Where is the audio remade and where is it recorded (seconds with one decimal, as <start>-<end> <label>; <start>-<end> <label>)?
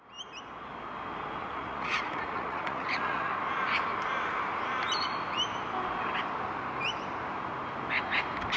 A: 0.0-1.4 recorded; 1.4-3.3 remade; 3.3-8.6 recorded